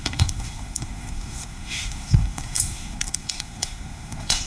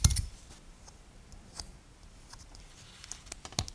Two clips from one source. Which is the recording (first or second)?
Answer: second